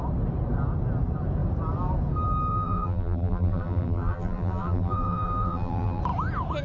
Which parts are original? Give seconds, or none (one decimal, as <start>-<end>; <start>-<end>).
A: 0.0-2.5; 6.0-6.6